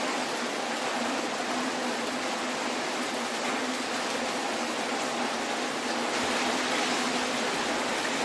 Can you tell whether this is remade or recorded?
recorded